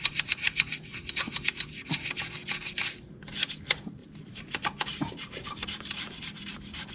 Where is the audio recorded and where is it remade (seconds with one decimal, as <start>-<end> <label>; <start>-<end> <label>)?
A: 0.0-0.9 recorded; 0.9-2.3 remade; 2.3-4.0 recorded; 4.0-6.9 remade